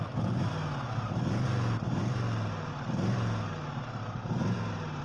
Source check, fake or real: real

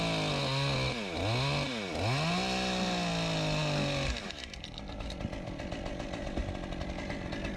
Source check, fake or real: real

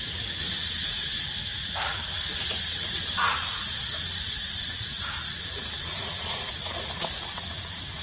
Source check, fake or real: fake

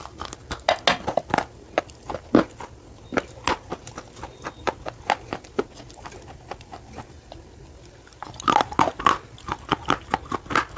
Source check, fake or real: real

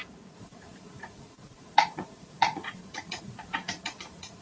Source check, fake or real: fake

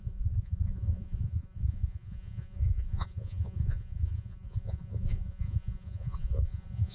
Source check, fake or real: fake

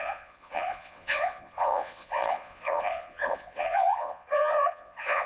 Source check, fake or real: fake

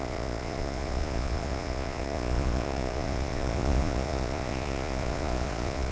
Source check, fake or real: fake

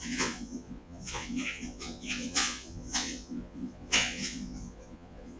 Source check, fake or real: fake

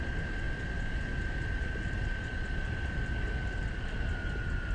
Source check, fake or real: real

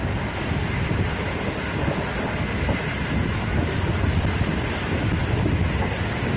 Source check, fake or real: real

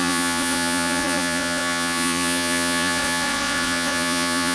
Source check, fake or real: fake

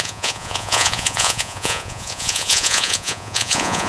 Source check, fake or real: fake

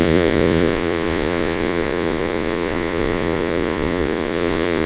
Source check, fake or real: fake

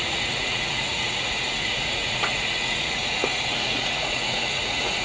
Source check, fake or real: fake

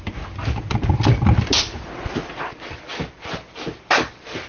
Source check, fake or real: real